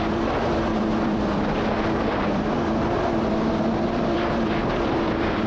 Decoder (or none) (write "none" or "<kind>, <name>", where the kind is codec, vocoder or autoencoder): vocoder, BigVGAN v2